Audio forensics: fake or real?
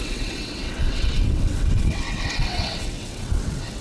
fake